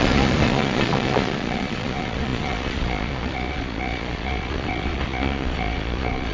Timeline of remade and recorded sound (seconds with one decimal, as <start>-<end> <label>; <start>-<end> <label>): 0.0-6.3 remade